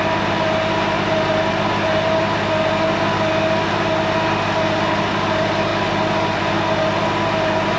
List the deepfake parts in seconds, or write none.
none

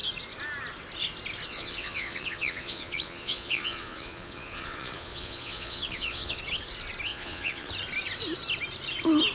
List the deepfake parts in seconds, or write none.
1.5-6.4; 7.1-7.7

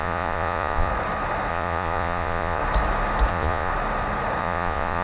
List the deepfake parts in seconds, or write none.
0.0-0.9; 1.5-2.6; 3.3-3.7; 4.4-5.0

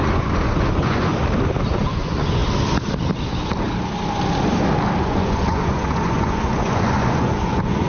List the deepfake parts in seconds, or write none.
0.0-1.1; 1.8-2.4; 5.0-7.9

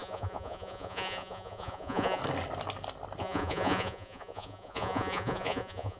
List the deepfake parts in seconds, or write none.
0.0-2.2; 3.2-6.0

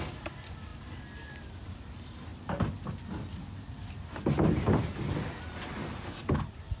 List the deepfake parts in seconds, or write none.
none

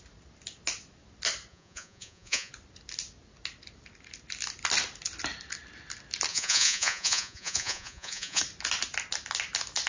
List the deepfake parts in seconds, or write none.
1.5-2.5; 6.3-8.4

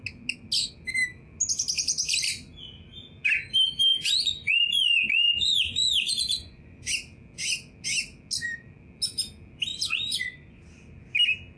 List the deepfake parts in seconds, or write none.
3.9-6.9; 9.7-10.6